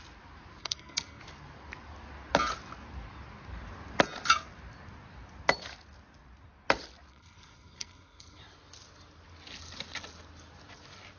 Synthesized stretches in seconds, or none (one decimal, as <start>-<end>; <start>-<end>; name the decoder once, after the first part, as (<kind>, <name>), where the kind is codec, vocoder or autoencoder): 0.6-1.2 (codec, SNAC); 7.1-8.4